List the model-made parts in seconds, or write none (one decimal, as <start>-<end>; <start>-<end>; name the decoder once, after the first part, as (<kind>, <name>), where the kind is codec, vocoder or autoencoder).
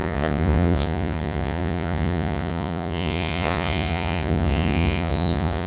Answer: 0.0-5.7 (vocoder, Vocos)